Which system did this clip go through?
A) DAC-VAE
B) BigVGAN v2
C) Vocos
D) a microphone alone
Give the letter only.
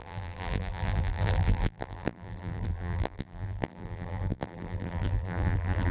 B